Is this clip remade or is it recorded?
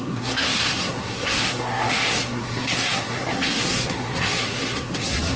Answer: remade